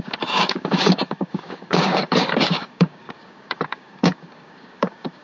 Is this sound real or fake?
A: fake